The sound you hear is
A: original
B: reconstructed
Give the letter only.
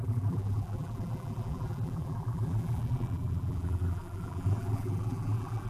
B